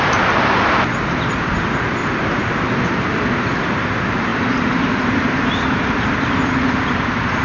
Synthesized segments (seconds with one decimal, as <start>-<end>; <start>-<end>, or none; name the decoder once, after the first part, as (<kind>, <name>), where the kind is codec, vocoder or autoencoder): 2.0-2.8 (vocoder, BigVGAN v2); 4.3-5.4